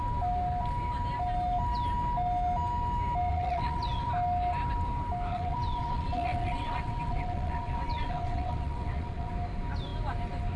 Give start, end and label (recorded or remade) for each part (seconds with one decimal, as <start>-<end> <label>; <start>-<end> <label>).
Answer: 0.0-3.3 recorded; 3.3-4.1 remade; 4.1-5.3 recorded; 5.3-9.3 remade; 9.3-10.6 recorded